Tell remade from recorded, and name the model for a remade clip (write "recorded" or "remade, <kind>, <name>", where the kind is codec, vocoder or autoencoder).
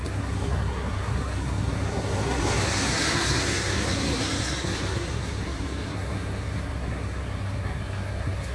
remade, codec, SNAC